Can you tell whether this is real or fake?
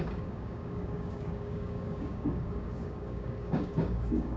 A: fake